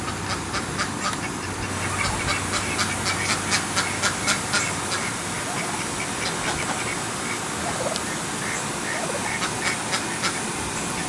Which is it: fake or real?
real